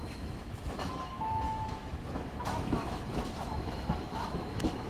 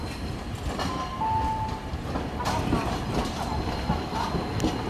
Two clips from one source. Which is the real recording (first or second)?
second